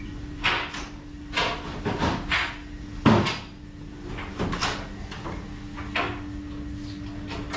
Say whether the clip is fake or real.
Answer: real